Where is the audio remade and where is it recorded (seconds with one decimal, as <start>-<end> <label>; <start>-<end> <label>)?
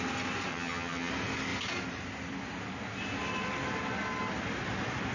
0.0-0.5 recorded; 0.5-1.1 remade; 1.1-5.1 recorded